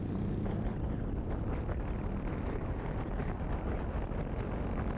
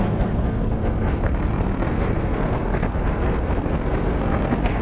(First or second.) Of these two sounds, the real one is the first